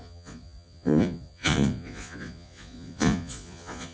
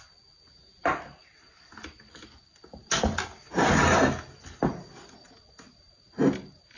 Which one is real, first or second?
second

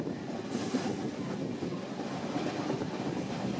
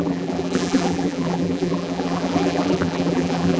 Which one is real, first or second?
first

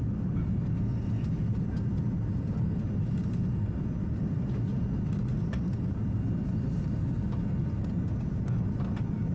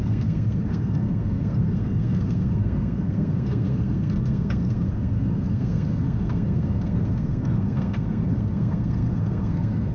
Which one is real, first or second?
first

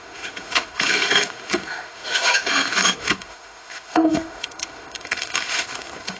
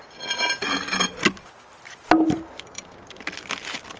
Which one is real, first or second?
second